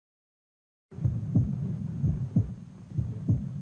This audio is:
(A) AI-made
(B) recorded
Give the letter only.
B